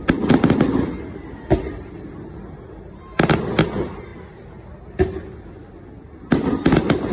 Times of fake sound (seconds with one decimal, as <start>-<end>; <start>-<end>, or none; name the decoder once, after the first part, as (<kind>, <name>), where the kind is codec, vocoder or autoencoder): none

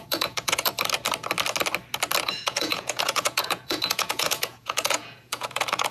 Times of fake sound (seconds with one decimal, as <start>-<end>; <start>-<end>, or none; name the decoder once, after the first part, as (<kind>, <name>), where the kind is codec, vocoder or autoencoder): 0.0-0.7 (vocoder, Vocos); 2.2-5.9

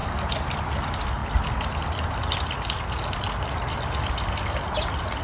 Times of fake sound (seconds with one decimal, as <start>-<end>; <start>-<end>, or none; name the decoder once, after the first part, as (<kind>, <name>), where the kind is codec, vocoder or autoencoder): none

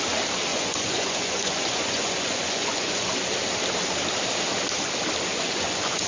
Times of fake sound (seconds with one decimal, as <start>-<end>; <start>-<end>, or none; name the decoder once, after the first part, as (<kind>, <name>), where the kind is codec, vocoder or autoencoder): 0.5-3.1 (vocoder, Vocos); 5.3-6.1

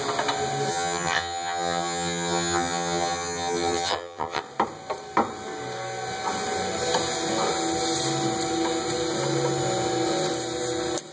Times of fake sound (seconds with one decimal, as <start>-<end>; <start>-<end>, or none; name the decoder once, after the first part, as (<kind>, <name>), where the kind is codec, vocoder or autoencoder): 0.7-4.4 (vocoder, HiFi-GAN)

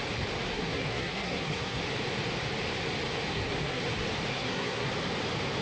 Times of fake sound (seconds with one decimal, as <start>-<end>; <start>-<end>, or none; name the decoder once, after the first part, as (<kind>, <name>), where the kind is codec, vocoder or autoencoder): 0.5-1.8 (codec, SNAC); 3.3-3.8; 4.3-4.9

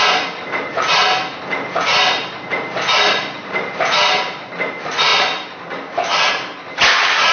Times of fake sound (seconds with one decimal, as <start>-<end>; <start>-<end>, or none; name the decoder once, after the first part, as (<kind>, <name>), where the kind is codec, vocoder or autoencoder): none